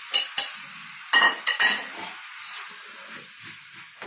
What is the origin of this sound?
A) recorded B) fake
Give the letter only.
A